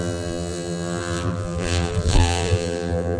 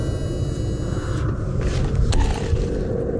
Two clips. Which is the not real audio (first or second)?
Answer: first